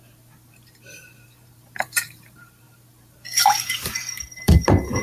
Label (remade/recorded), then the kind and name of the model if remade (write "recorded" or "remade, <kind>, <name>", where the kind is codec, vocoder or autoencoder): remade, vocoder, BigVGAN v2